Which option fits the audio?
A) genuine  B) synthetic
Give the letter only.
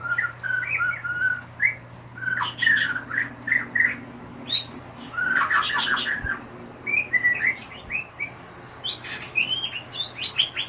A